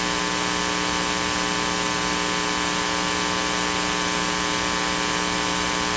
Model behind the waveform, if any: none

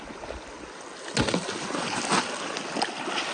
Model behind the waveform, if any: none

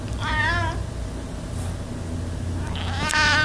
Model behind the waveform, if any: none